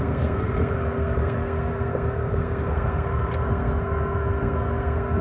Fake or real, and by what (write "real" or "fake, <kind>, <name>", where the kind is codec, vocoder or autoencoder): fake, codec, SNAC